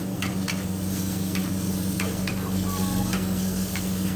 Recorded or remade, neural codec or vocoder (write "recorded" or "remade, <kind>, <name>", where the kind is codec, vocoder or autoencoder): remade, codec, SNAC